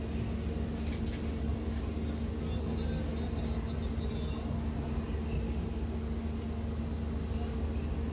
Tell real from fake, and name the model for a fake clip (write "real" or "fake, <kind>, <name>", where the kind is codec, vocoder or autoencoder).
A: real